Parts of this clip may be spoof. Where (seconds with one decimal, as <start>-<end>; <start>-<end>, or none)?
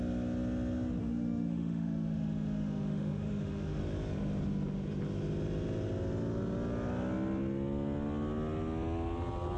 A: 1.0-3.8